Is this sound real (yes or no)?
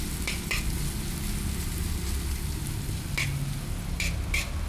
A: yes